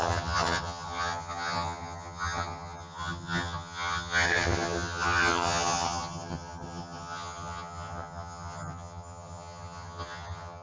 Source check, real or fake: fake